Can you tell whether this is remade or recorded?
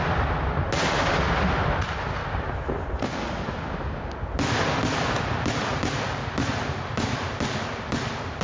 recorded